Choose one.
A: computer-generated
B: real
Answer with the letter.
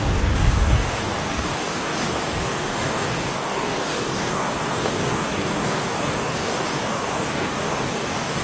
A